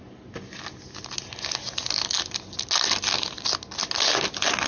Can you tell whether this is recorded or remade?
recorded